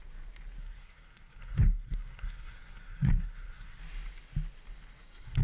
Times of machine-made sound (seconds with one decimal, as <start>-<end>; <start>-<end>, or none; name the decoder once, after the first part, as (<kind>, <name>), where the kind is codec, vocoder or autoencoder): 0.6-3.8 (codec, SNAC)